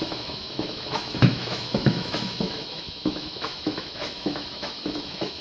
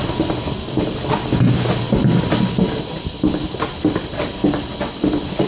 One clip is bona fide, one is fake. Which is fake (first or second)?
first